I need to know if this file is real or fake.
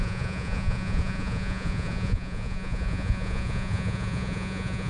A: fake